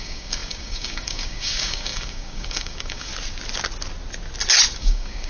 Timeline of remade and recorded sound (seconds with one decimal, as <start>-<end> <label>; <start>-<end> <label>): 0.0-3.1 remade; 3.1-4.8 recorded; 4.8-5.3 remade